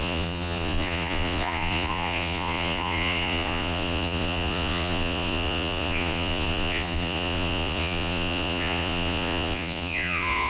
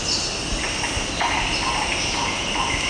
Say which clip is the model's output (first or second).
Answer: first